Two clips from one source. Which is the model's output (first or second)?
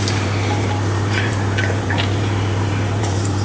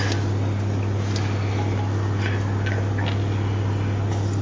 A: first